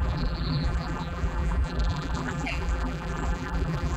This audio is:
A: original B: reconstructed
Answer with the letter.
B